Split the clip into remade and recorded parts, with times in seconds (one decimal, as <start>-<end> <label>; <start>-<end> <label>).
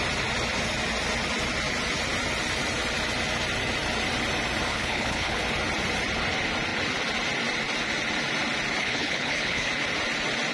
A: 0.0-4.7 recorded; 4.7-5.4 remade; 5.4-8.8 recorded; 8.8-9.7 remade; 9.7-10.5 recorded